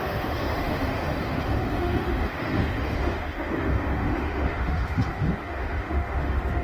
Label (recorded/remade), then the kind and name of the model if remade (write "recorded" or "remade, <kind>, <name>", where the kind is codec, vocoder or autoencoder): remade, autoencoder, DAC-VAE